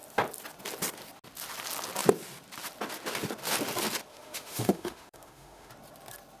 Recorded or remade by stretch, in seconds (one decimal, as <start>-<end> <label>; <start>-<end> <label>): 0.0-4.1 recorded; 4.1-5.7 remade; 5.7-6.4 recorded